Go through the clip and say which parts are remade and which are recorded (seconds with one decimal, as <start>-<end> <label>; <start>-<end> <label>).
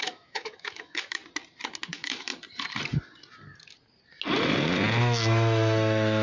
0.0-1.2 remade; 1.2-1.9 recorded; 1.9-2.3 remade; 2.3-5.0 recorded; 5.0-6.2 remade